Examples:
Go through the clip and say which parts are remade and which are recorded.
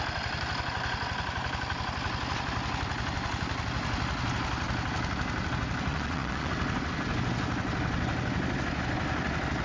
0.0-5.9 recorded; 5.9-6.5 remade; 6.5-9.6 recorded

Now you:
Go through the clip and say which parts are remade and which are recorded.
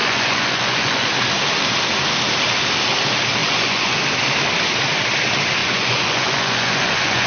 0.0-1.1 remade; 1.1-3.4 recorded; 3.4-4.0 remade; 4.0-5.6 recorded; 5.6-7.3 remade